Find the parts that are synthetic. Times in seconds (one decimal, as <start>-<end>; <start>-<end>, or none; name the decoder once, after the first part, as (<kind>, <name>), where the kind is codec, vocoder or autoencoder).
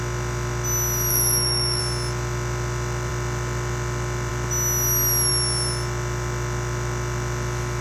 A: 1.1-1.8 (autoencoder, DAC-VAE)